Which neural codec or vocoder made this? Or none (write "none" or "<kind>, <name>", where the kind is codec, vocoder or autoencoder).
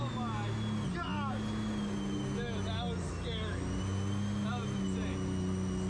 none